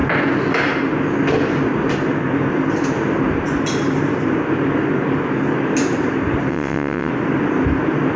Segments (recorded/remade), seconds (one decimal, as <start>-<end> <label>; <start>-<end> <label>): 0.0-6.5 recorded; 6.5-7.1 remade; 7.1-8.2 recorded